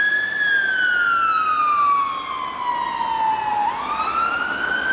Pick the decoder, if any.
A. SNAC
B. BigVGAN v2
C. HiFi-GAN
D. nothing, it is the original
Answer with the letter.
D